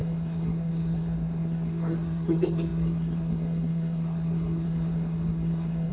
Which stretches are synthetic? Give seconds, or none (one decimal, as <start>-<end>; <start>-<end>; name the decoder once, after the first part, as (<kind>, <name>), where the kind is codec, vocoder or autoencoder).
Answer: 0.0-5.9 (codec, SNAC)